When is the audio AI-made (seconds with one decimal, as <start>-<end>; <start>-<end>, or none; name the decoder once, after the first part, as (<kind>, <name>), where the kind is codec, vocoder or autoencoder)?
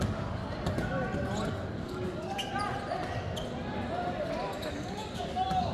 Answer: 0.0-0.4 (codec, DAC); 1.5-2.5; 4.7-5.7